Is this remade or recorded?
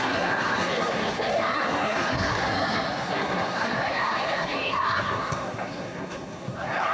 remade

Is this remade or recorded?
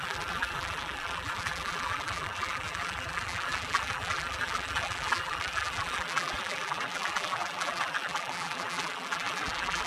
remade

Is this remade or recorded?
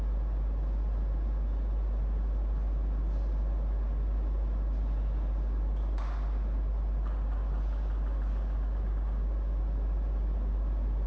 recorded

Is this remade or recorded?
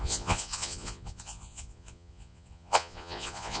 remade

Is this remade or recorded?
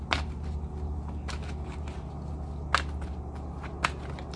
recorded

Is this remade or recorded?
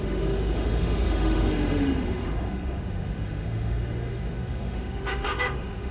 remade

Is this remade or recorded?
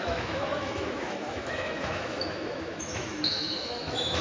remade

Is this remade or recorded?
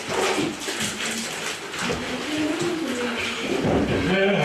recorded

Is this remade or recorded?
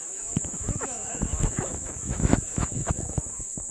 remade